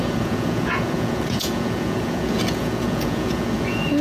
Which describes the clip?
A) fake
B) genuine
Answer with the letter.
A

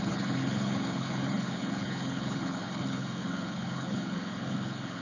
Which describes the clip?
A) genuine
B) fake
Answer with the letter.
B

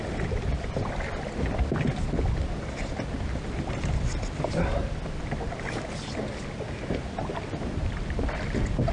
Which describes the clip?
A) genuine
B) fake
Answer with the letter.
A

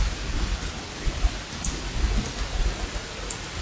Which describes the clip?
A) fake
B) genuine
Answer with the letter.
B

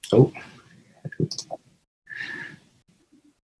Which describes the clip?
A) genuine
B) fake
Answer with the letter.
A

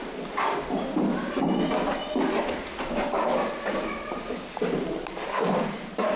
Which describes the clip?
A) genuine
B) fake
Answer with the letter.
A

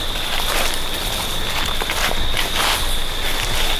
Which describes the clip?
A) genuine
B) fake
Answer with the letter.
A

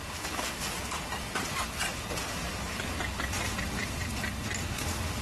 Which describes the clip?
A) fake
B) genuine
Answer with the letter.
B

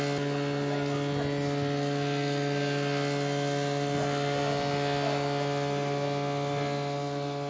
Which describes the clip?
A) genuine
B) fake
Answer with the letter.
A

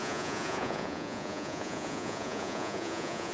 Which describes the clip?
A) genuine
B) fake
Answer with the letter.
B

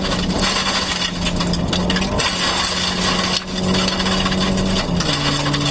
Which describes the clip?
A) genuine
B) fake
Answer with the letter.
A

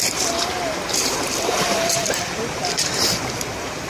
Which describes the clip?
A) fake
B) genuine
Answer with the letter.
A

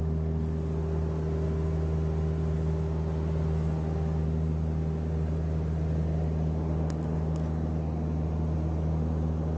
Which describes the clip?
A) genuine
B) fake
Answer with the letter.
A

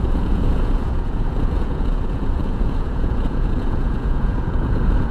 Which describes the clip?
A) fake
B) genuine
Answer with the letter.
A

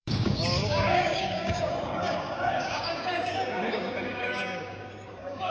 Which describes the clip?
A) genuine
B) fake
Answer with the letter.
B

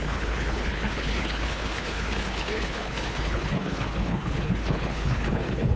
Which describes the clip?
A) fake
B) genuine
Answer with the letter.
A